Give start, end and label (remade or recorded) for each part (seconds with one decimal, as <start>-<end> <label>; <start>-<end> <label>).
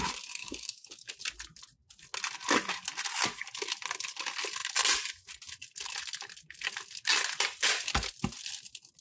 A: 0.0-0.4 recorded; 0.4-1.1 remade; 1.1-9.0 recorded